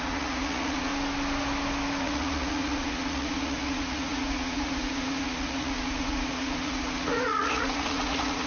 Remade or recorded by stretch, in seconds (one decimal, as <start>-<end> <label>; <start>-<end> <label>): 0.0-0.9 remade; 0.9-2.0 recorded; 2.0-8.5 remade